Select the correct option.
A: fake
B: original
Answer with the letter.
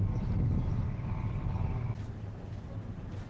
B